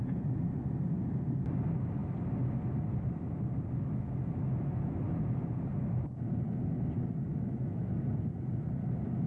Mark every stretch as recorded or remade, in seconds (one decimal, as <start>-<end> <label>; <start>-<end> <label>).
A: 0.0-7.3 recorded; 7.3-7.9 remade; 7.9-9.3 recorded